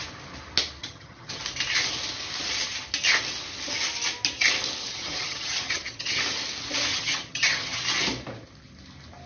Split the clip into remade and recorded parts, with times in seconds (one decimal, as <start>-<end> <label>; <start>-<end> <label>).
0.0-0.8 recorded; 0.8-1.4 remade; 1.4-4.8 recorded; 4.8-6.2 remade; 6.2-6.9 recorded; 6.9-7.8 remade; 7.8-9.3 recorded